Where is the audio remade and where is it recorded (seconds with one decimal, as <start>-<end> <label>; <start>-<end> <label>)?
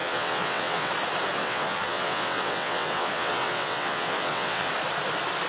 0.0-0.9 remade; 0.9-1.4 recorded; 1.4-4.7 remade; 4.7-5.5 recorded